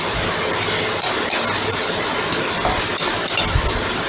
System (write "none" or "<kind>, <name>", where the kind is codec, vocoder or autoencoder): none